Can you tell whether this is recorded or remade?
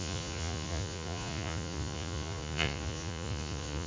remade